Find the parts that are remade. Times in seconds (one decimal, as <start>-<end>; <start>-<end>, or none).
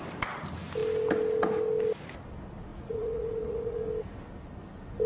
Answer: 2.7-3.9